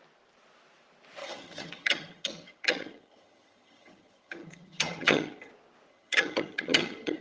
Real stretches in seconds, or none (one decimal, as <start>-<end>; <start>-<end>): 0.0-1.2; 5.5-5.9

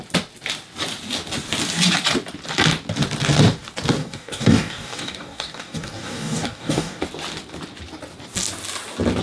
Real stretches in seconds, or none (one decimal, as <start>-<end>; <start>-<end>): 0.0-4.0; 7.0-9.2

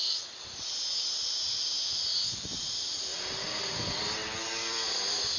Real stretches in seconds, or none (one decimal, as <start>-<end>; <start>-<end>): 0.0-1.5; 2.1-2.7; 3.1-3.7

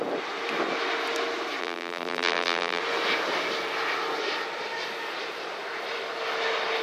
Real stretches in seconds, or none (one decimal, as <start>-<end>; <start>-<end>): 0.0-1.6; 2.8-6.8

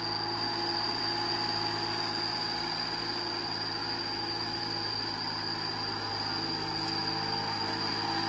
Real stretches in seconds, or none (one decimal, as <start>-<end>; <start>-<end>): 0.0-3.8; 4.6-8.3

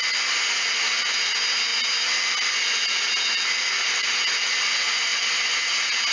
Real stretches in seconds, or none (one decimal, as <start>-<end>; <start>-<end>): 0.0-6.1